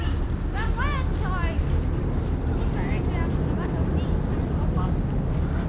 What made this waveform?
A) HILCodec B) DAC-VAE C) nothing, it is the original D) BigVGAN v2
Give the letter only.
C